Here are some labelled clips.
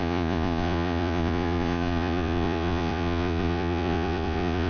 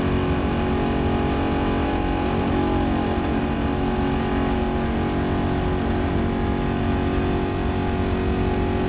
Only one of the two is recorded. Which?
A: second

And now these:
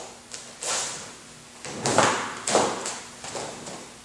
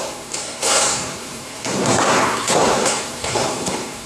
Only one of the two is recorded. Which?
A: first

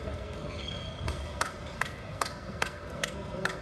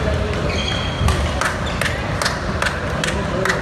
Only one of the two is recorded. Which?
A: second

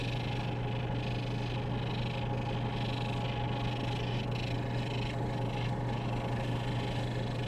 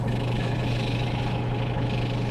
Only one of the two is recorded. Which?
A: first